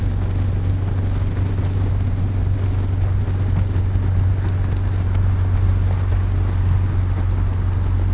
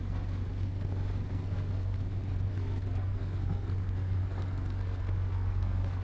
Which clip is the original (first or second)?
first